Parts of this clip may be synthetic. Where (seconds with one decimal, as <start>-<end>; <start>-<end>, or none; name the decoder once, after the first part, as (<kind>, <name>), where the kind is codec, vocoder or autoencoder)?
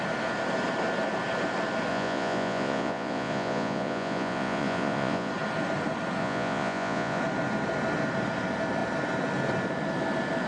1.9-5.3 (vocoder, Vocos); 6.2-7.2